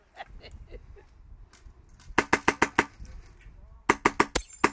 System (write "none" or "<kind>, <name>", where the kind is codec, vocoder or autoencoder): none